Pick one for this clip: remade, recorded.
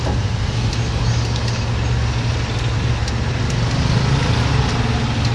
recorded